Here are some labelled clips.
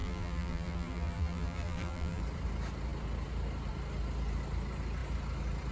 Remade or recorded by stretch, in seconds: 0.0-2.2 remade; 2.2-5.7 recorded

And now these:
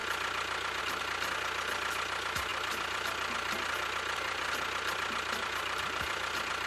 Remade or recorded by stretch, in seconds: 0.0-2.5 recorded; 2.5-6.7 remade

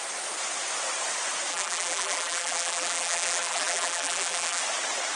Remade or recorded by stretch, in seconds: 0.0-1.5 recorded; 1.5-4.6 remade; 4.6-5.2 recorded

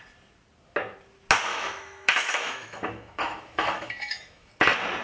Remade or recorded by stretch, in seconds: 0.0-1.5 recorded; 1.5-4.5 remade; 4.5-5.0 recorded

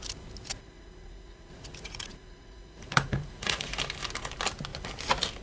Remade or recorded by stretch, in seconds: 0.0-0.5 recorded; 0.5-3.7 remade; 3.7-5.4 recorded

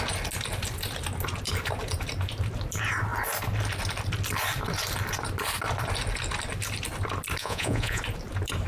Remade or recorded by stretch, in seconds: 0.0-7.4 recorded; 7.4-8.0 remade; 8.0-8.7 recorded